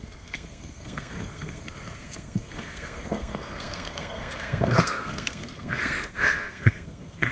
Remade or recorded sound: remade